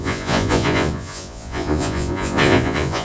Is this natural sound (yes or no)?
no